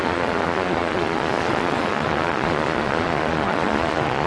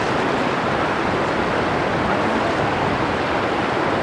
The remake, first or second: first